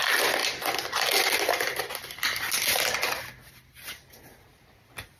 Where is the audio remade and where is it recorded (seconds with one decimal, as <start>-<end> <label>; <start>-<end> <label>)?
0.0-5.2 recorded